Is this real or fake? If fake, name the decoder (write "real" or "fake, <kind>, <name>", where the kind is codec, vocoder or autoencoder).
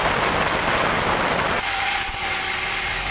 real